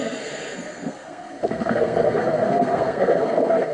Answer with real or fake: fake